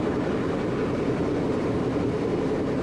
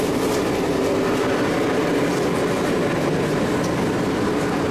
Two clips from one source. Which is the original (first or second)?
second